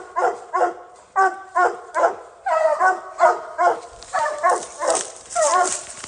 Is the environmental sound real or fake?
fake